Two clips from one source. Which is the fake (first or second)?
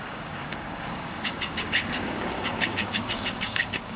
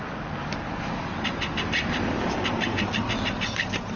first